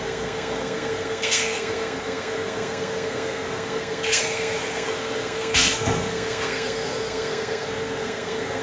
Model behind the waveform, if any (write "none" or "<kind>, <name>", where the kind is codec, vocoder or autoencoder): codec, SNAC